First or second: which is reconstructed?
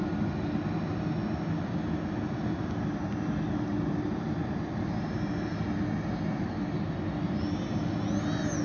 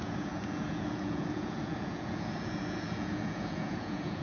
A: second